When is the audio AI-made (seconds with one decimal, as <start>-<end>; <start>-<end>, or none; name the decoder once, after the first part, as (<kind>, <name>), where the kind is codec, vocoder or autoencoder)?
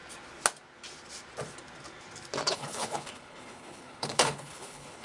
2.5-5.0 (codec, HILCodec)